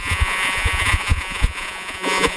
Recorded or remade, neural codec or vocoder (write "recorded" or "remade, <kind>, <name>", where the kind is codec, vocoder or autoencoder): remade, vocoder, Vocos